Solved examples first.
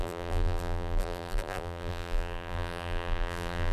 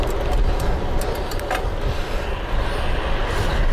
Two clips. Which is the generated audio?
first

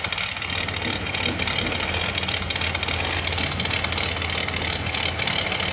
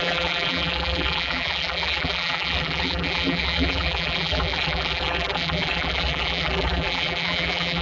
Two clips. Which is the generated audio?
second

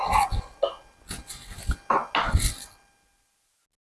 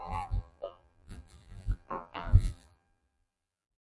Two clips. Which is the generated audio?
second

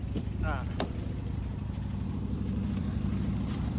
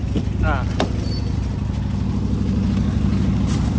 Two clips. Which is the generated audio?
first